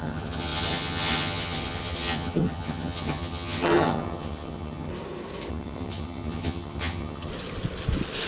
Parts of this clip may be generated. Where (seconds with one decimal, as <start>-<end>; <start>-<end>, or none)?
0.0-4.9; 5.5-7.3